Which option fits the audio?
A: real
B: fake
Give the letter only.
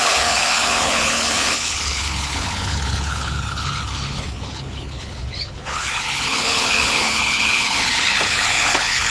B